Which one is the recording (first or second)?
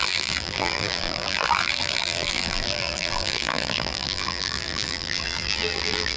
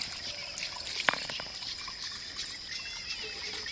second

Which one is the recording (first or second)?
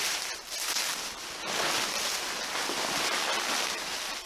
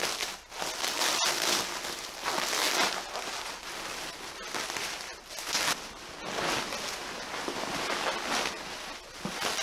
second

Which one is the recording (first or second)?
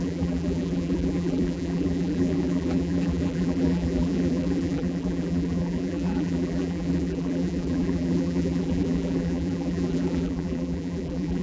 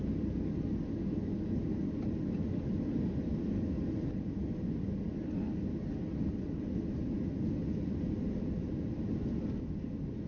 second